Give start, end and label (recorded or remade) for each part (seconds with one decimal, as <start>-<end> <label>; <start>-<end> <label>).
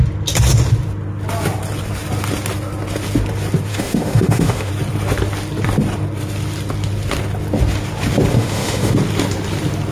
0.0-3.7 recorded; 3.7-4.7 remade; 4.7-8.3 recorded; 8.3-8.9 remade; 8.9-9.9 recorded